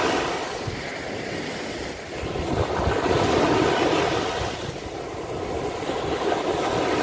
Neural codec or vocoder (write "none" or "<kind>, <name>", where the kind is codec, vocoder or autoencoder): none